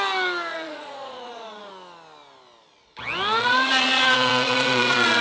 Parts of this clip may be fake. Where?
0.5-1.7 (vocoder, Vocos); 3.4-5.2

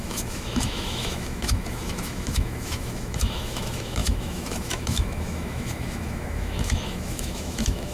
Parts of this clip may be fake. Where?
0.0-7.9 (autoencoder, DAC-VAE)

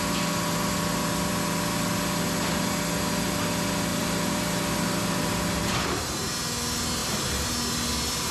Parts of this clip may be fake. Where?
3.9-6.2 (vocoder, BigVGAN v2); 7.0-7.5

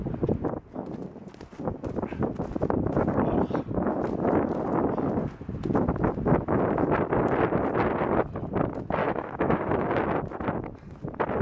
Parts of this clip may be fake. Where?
9.0-9.9 (autoencoder, DAC-VAE)

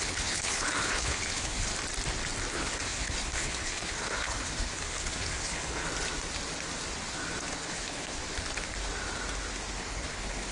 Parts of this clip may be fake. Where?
0.0-1.7 (codec, HILCodec); 2.5-5.9; 7.5-8.2; 9.8-10.5

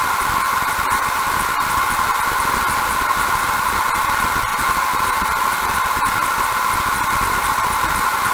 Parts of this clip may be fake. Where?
none